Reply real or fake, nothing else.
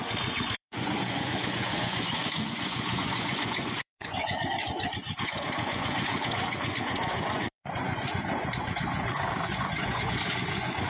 fake